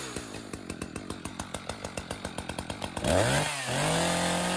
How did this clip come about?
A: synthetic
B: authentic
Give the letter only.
B